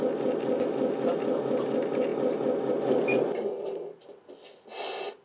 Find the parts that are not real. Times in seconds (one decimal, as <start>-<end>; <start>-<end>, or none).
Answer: none